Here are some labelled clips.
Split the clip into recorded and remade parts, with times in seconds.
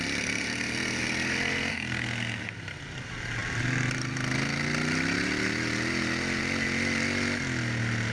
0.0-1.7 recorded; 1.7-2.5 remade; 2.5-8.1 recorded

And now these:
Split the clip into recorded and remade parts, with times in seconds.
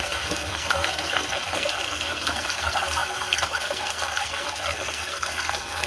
0.0-5.9 remade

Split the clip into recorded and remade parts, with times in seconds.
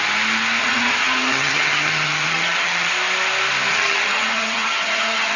0.0-0.6 recorded; 0.6-2.9 remade; 2.9-3.7 recorded; 3.7-5.4 remade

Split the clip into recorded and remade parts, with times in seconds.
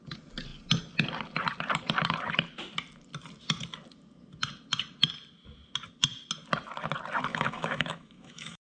0.0-7.3 recorded; 7.3-8.7 remade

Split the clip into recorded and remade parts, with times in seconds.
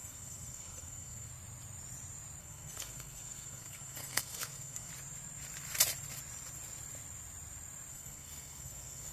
0.0-1.3 remade; 1.3-2.4 recorded; 2.4-4.9 remade; 4.9-7.9 recorded; 7.9-9.1 remade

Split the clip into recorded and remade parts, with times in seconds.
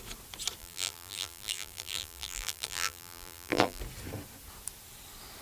0.0-0.6 recorded; 0.6-3.8 remade; 3.8-5.4 recorded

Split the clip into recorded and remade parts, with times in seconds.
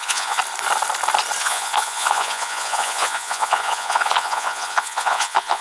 0.0-0.4 remade; 0.4-1.4 recorded; 1.4-5.6 remade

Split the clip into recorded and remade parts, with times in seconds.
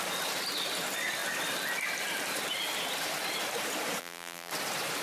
0.0-4.0 recorded; 4.0-4.5 remade; 4.5-5.0 recorded